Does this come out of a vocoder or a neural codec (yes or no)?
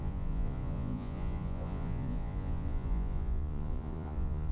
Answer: yes